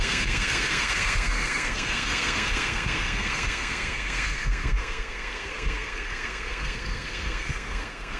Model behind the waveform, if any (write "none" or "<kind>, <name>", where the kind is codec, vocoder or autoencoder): codec, SNAC